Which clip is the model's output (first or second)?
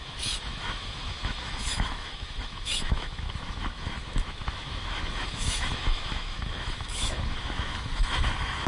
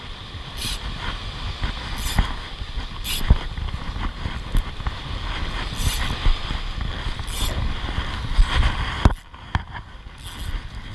first